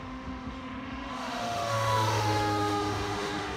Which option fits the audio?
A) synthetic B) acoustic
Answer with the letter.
A